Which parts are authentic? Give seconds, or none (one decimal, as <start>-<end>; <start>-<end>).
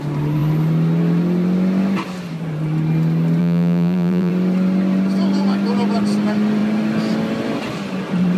0.0-3.4; 4.3-8.4